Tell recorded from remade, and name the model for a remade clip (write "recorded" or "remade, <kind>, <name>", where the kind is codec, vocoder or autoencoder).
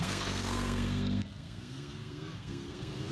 remade, codec, SNAC